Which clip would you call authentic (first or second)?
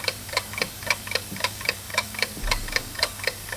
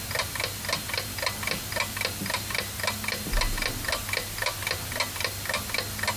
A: second